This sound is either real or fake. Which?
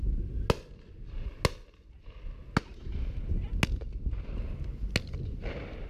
real